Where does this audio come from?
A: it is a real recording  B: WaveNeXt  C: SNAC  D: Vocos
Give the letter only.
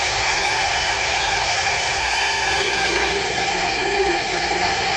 C